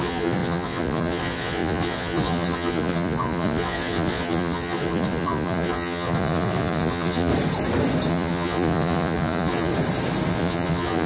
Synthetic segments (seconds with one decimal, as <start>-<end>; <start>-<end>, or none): 0.0-7.3; 8.1-9.7; 10.3-11.1